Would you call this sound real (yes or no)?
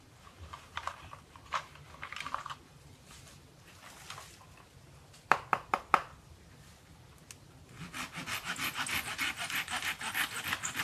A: yes